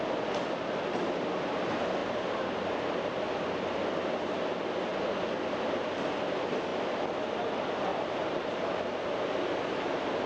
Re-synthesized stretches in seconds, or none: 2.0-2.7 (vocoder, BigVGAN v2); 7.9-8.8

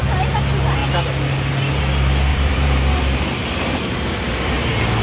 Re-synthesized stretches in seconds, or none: 2.3-4.6 (vocoder, BigVGAN v2)

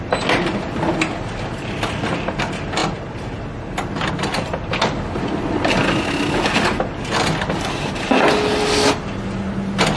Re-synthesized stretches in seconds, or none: none

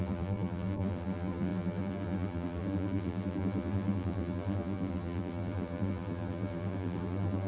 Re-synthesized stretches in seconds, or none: 0.0-7.5 (vocoder, BigVGAN v2)

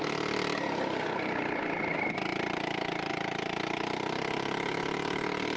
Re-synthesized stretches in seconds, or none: none

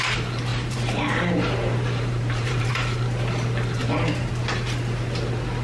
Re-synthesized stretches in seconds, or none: 0.5-2.7 (vocoder, BigVGAN v2); 3.8-4.3

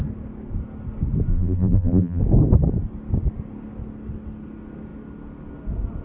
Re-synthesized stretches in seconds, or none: 1.3-2.2 (vocoder, BigVGAN v2)